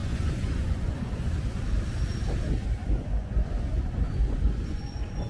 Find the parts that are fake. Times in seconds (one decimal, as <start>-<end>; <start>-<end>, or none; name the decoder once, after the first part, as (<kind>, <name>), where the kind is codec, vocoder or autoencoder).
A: 0.0-1.6 (vocoder, Vocos); 2.8-5.3